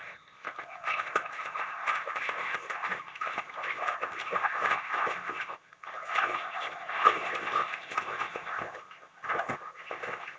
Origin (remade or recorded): remade